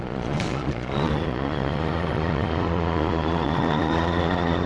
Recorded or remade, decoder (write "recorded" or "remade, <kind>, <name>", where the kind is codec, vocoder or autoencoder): remade, vocoder, Vocos